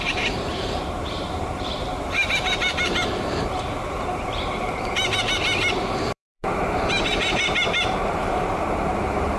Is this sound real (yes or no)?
no